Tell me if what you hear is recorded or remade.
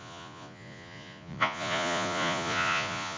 remade